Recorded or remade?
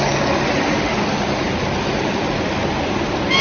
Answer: recorded